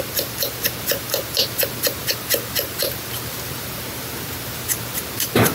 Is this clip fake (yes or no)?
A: no